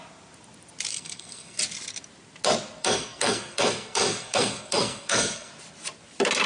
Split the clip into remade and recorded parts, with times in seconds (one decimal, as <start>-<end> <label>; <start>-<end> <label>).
0.0-0.9 recorded; 0.9-1.6 remade; 1.6-2.8 recorded; 2.8-5.5 remade; 5.5-6.5 recorded